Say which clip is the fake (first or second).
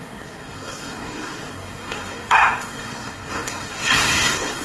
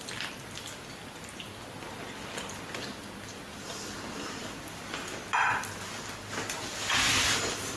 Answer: first